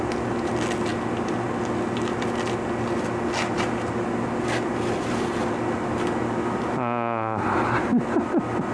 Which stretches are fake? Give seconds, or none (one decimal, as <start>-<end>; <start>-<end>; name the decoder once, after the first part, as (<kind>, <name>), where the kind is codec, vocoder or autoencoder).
none